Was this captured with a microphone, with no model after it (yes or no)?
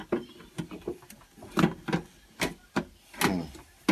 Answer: yes